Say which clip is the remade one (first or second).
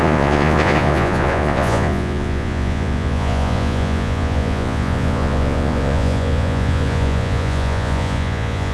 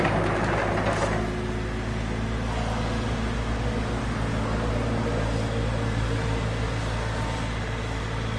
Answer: first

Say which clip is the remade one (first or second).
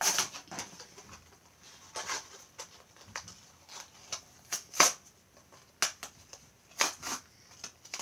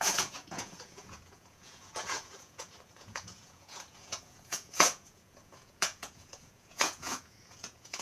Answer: second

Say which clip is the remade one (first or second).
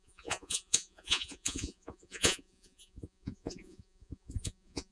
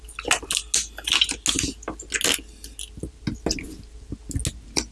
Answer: first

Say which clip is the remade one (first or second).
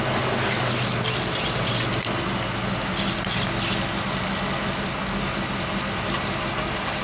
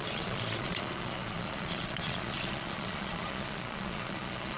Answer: second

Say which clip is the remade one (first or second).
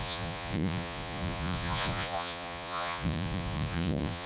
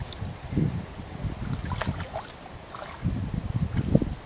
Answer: first